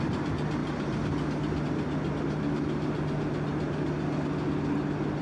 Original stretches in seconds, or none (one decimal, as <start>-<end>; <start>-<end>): 0.0-5.2